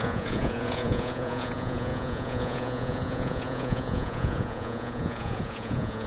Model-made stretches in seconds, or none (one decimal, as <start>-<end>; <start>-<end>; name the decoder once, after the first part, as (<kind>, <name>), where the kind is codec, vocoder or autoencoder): 0.0-6.1 (vocoder, Vocos)